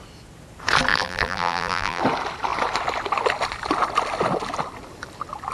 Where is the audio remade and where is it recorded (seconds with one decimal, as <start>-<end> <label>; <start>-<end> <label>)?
0.0-0.9 recorded; 0.9-2.0 remade; 2.0-5.5 recorded